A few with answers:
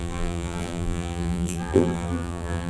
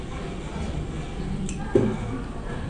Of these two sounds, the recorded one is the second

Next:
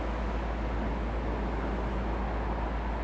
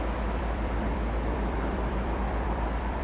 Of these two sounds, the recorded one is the first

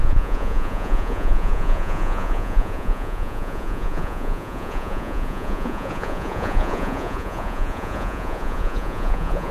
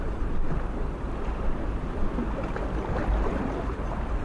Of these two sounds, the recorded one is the second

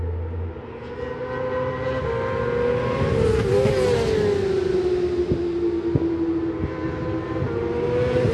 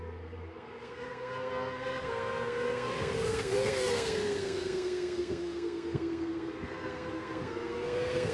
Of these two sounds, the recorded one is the first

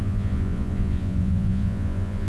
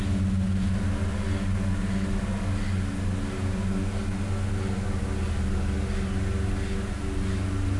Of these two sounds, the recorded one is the second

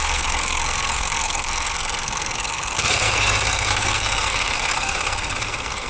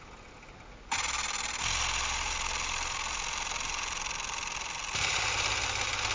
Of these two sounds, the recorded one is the second